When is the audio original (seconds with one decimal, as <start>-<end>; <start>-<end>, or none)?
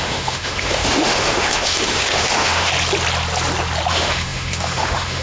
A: 2.7-3.9